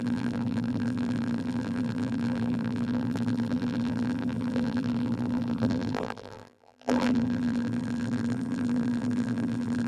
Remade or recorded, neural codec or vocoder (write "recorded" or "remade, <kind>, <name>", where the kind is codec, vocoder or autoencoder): remade, vocoder, BigVGAN v2